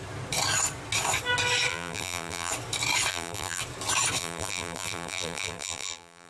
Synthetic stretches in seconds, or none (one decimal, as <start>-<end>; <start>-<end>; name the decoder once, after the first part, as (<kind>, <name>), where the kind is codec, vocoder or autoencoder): 1.7-2.5 (vocoder, BigVGAN v2); 3.1-3.6; 4.2-6.3